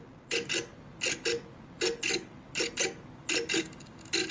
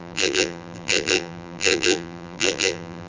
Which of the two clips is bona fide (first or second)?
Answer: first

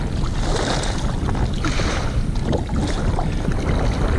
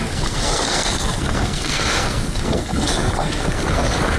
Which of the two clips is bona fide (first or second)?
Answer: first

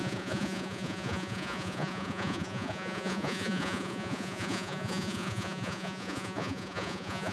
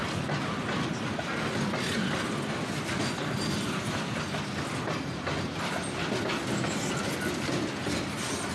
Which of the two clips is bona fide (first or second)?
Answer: second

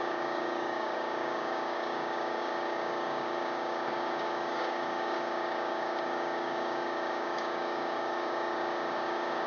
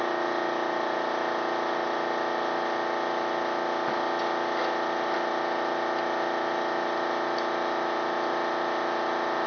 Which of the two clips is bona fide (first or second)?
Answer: second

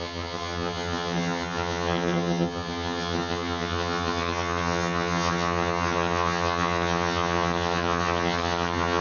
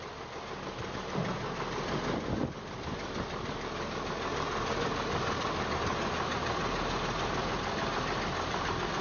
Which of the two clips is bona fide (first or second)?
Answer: second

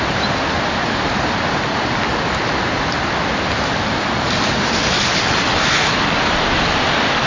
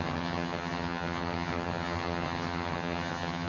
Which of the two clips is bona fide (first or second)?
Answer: first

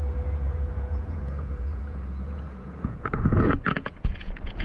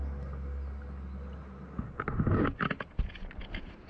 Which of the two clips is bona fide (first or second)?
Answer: second